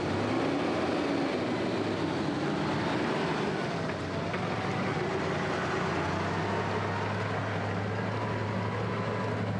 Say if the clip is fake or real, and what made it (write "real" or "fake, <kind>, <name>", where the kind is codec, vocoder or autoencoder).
real